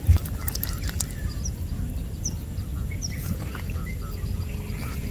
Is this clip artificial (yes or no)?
no